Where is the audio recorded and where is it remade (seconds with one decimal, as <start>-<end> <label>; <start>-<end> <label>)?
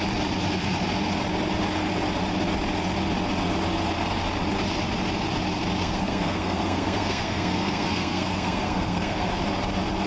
0.0-5.8 recorded; 5.8-9.3 remade; 9.3-10.1 recorded